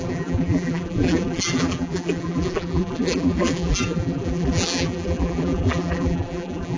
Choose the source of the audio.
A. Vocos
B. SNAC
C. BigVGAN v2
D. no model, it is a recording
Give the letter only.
C